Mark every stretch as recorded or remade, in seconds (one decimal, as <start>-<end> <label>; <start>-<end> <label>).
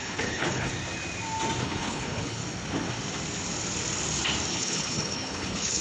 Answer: 0.0-0.7 remade; 0.7-1.6 recorded; 1.6-2.4 remade; 2.4-4.5 recorded; 4.5-5.8 remade